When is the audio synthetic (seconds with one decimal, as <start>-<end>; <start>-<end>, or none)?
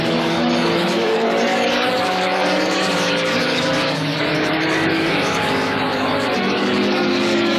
0.0-7.6